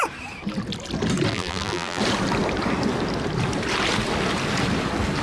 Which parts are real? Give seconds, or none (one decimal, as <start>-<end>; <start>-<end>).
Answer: 0.0-1.3; 2.0-5.2